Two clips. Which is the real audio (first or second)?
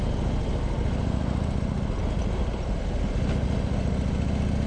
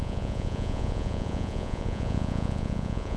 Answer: first